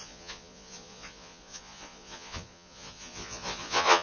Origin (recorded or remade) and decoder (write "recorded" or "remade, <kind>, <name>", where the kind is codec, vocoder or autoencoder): remade, vocoder, Vocos